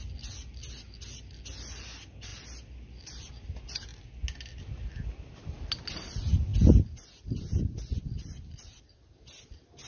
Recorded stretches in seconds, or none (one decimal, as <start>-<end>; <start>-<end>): 0.0-9.9